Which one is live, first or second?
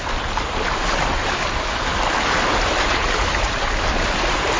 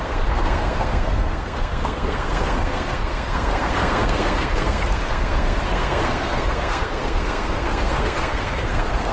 first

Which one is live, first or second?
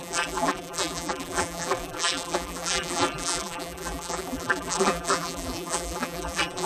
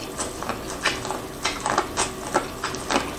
second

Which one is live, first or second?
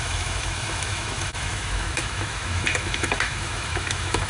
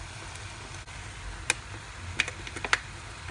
second